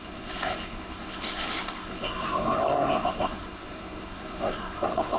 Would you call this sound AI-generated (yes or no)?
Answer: yes